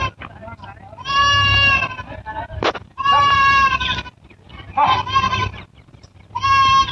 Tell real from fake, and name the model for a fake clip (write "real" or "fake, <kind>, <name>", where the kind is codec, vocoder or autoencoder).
real